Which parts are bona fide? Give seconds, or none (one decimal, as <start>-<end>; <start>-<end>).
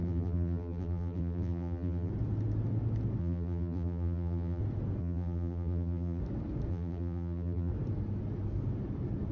2.1-3.2; 4.6-5.0; 6.2-6.7; 7.7-9.3